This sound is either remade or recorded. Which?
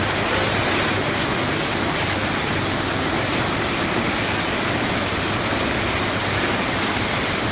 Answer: recorded